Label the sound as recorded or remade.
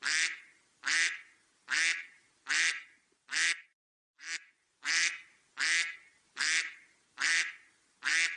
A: recorded